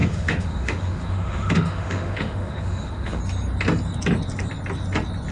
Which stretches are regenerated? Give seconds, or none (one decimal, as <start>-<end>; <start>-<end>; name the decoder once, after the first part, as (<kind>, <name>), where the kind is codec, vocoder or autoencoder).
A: 0.0-3.2 (autoencoder, DAC-VAE)